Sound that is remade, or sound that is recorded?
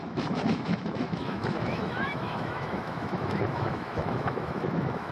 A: remade